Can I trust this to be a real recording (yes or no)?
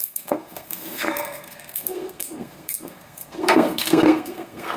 no